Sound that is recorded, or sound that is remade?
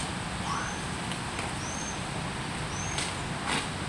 recorded